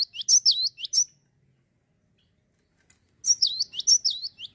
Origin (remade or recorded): recorded